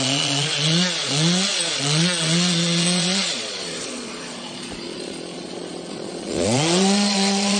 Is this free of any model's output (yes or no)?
no